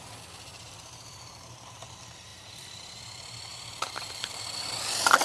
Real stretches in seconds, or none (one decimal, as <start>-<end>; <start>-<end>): 0.0-0.5; 1.8-2.3; 3.0-3.5; 4.4-5.2